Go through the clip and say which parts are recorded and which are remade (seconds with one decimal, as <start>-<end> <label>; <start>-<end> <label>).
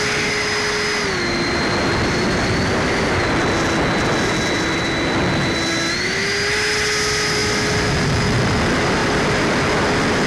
0.0-2.0 recorded; 2.0-3.4 remade; 3.4-7.4 recorded; 7.4-8.4 remade; 8.4-9.0 recorded; 9.0-9.9 remade; 9.9-10.3 recorded